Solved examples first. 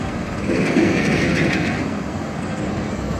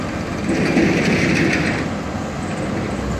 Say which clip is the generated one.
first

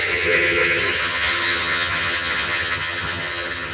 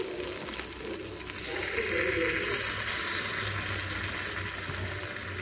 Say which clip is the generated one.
first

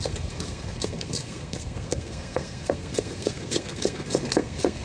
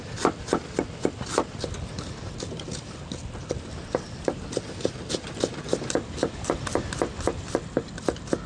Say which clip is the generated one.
first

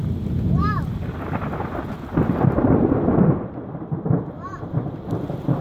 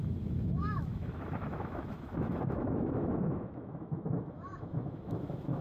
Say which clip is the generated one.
second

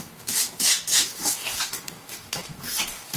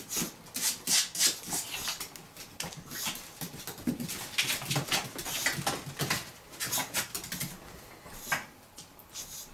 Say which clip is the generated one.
first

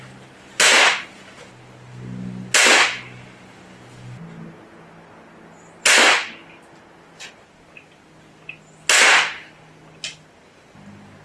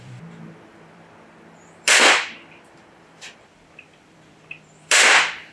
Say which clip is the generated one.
second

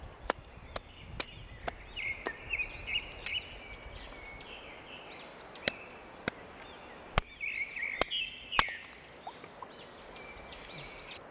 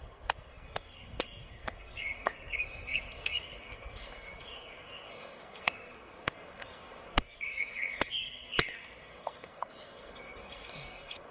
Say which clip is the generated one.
second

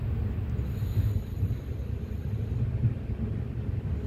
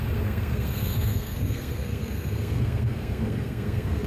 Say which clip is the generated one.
second